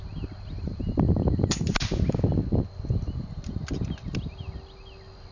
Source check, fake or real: real